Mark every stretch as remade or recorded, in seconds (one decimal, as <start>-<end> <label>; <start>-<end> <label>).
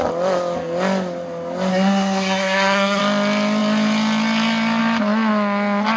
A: 0.0-1.7 recorded; 1.7-3.0 remade; 3.0-6.0 recorded